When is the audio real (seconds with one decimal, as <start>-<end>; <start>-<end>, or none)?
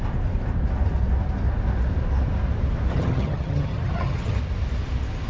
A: 0.0-2.9; 4.4-5.3